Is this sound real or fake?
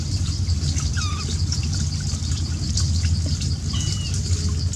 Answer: real